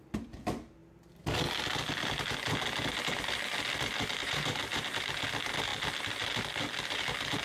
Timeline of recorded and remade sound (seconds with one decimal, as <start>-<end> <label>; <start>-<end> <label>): 0.0-4.2 recorded; 4.2-5.1 remade; 5.1-7.4 recorded